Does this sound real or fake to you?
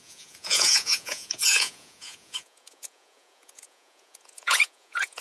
fake